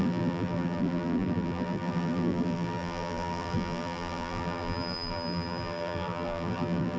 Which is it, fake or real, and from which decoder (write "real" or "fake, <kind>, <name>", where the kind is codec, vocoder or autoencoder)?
fake, vocoder, BigVGAN v2